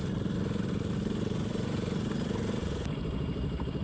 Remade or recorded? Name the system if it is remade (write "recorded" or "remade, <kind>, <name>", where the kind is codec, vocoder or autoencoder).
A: remade, vocoder, BigVGAN v2